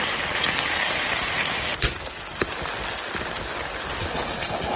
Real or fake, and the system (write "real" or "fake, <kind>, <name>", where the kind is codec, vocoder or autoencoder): real